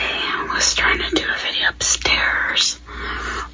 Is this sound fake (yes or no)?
no